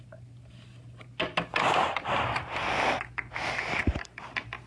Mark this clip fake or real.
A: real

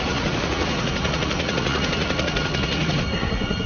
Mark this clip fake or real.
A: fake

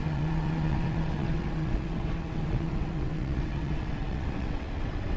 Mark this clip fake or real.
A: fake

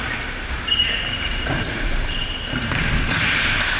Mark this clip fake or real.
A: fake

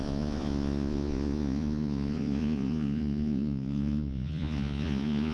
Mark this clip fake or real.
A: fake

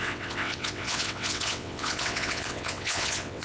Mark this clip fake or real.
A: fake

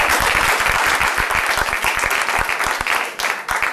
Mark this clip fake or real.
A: real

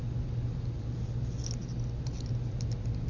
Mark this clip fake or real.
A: real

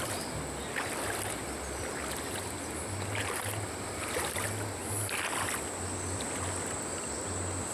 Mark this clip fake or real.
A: real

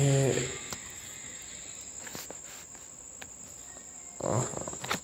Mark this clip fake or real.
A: real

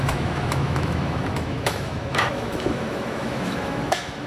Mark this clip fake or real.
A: fake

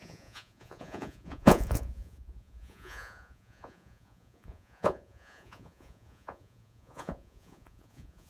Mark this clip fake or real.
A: fake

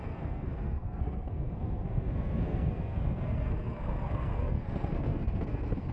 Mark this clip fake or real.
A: fake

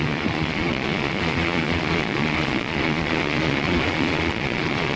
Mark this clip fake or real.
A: fake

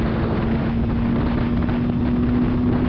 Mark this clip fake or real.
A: real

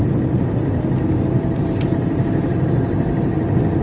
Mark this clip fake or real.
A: real